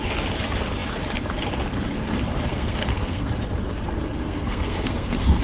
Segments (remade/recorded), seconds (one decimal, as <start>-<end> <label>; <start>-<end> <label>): 0.0-2.5 recorded; 2.5-3.3 remade; 3.3-4.2 recorded; 4.2-5.4 remade